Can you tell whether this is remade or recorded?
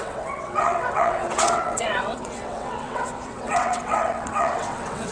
remade